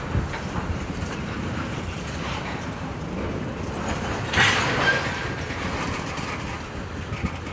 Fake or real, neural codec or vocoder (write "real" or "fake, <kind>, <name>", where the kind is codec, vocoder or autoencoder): real